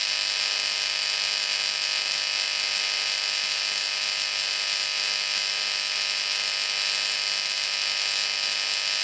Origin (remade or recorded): recorded